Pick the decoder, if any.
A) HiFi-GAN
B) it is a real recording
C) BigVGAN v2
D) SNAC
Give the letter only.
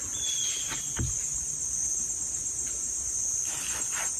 B